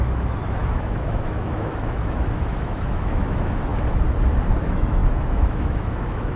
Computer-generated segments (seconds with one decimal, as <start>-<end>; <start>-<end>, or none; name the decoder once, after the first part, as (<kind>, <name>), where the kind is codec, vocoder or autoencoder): 0.0-3.7 (autoencoder, DAC-VAE); 4.6-6.4